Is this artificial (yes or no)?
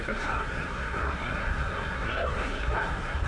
yes